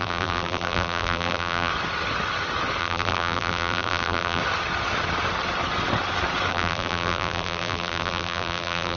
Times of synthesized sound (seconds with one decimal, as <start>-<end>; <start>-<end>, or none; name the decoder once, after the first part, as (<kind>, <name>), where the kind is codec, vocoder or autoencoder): 0.0-1.7 (vocoder, BigVGAN v2); 2.8-4.4; 6.5-9.0

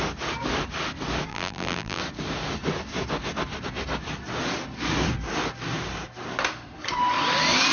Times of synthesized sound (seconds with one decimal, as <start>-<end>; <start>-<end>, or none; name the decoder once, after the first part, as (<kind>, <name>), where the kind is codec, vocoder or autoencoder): 1.3-2.0 (vocoder, BigVGAN v2)